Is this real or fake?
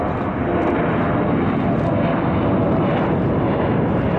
real